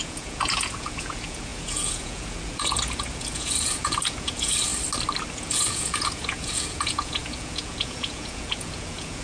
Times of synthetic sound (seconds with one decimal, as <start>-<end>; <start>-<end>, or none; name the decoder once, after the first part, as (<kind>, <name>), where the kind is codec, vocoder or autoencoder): 0.0-4.7 (vocoder, Vocos); 5.3-9.2